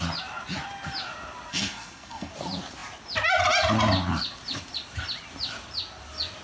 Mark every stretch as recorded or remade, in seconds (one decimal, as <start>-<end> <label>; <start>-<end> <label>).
0.0-1.5 recorded; 1.5-2.3 remade; 2.3-6.4 recorded